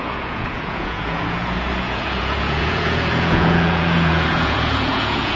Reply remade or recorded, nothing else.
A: remade